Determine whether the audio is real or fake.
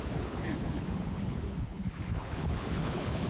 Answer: fake